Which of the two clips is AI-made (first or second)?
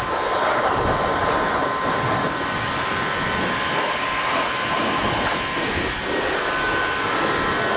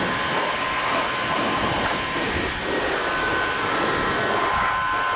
second